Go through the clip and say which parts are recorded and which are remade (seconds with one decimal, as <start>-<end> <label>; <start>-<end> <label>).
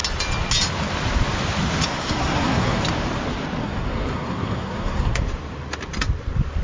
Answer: 0.0-1.9 recorded; 1.9-2.8 remade; 2.8-3.6 recorded; 3.6-5.2 remade; 5.2-6.6 recorded